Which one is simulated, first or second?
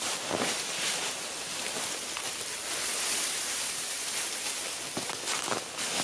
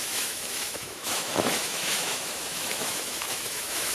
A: second